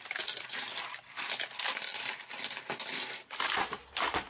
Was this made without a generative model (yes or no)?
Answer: yes